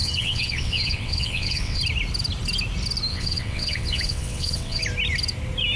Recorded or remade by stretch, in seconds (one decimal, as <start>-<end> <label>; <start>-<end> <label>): 0.0-1.8 remade; 1.8-3.1 recorded; 3.1-4.8 remade; 4.8-5.8 recorded